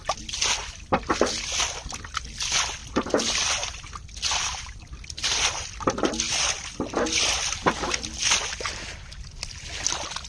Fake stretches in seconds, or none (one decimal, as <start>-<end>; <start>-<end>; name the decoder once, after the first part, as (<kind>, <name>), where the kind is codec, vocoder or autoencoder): 2.8-7.4 (vocoder, BigVGAN v2)